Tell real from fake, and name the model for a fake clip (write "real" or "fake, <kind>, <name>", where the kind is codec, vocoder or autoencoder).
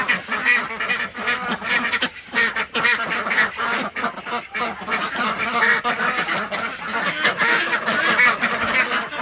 real